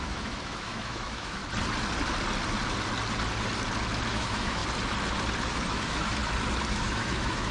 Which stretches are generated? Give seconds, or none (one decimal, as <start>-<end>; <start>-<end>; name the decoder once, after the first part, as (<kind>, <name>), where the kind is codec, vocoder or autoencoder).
0.0-1.4 (autoencoder, DAC-VAE); 4.1-4.6; 5.4-6.2; 6.7-7.5